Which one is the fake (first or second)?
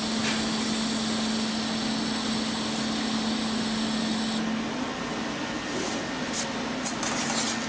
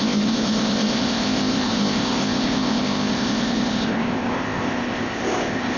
second